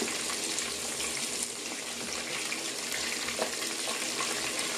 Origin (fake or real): fake